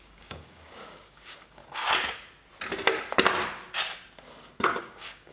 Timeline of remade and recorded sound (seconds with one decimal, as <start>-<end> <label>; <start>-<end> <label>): 0.0-1.6 remade; 1.6-4.8 recorded; 4.8-5.3 remade